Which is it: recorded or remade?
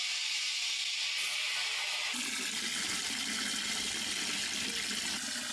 recorded